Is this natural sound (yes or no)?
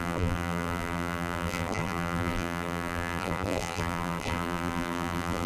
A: no